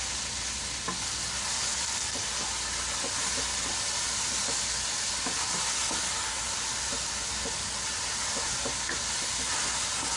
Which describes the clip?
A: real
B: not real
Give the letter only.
A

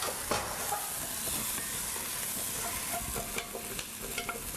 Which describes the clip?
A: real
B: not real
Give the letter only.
A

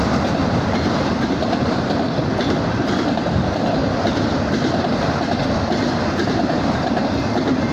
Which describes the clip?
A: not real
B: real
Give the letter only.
A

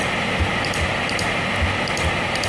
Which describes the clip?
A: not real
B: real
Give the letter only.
B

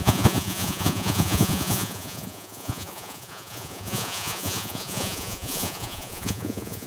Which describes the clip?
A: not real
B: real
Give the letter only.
A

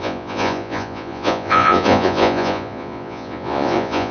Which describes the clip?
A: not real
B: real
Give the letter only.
A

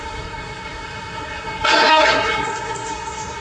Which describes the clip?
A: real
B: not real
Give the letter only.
B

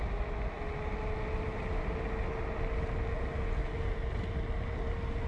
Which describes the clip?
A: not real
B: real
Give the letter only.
B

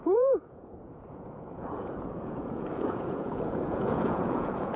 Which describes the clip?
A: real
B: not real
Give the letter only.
B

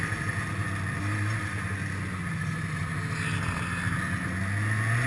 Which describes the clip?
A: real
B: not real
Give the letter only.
A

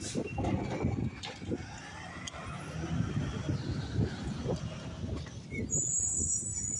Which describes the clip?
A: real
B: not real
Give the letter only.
A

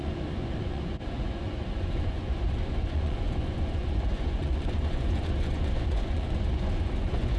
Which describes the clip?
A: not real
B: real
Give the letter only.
A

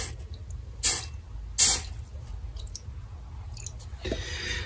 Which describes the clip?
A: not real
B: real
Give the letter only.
B